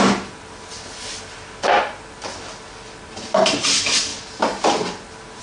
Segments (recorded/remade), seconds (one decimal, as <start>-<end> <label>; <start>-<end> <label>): 0.0-5.4 recorded